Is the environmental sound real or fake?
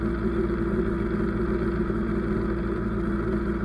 real